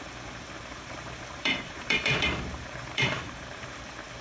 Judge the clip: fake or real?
fake